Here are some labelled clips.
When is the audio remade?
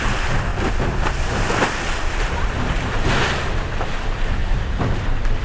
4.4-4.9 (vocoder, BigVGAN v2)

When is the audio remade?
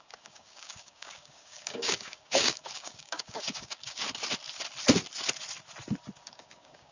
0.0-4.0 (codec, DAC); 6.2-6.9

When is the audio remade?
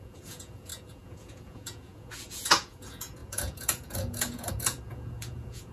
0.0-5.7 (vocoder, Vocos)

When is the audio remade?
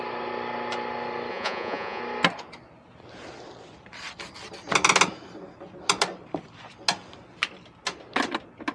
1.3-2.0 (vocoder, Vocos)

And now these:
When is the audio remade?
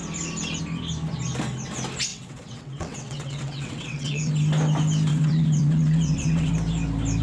2.1-4.3 (vocoder, WaveNeXt); 5.1-6.5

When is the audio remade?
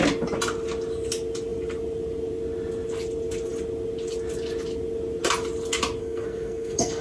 6.0-7.0 (codec, SNAC)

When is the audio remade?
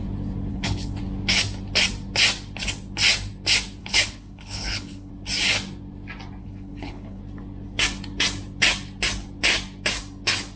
0.5-1.0 (codec, HILCodec); 3.8-5.1; 6.4-7.2